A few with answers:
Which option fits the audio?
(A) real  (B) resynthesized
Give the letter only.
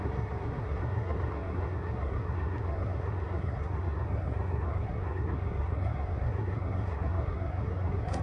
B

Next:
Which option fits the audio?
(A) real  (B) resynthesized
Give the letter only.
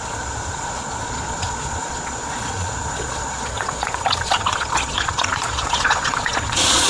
B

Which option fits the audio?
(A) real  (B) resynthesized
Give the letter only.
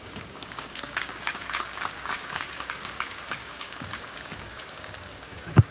B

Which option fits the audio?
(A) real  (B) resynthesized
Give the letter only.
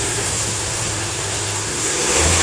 B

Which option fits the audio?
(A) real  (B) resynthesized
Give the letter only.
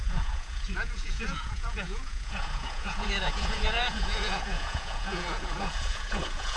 B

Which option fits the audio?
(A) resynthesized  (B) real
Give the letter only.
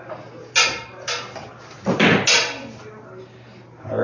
B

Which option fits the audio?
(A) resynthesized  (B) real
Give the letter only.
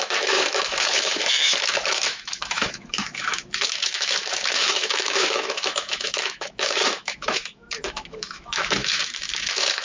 A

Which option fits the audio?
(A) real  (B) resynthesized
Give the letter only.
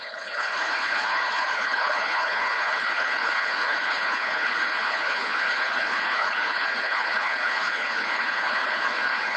B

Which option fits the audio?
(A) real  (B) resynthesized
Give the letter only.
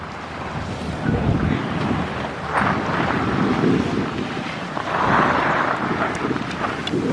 A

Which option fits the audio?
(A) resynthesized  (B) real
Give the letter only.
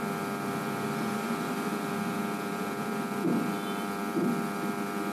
B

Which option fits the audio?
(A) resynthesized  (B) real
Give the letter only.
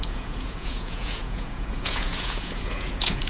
A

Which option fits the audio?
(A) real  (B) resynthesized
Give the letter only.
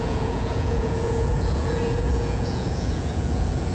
B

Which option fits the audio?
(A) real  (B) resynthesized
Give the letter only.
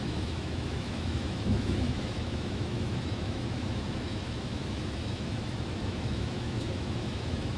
B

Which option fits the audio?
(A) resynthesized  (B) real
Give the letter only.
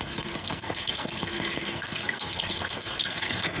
A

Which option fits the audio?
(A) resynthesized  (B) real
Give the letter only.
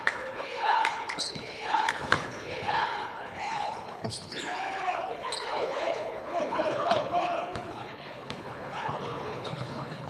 A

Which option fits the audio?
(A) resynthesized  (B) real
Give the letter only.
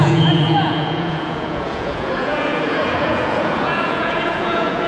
A